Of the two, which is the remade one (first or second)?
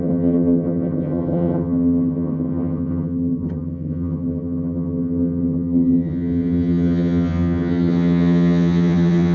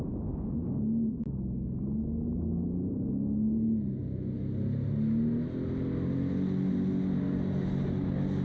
first